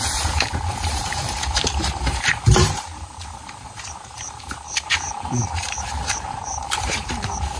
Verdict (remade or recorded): remade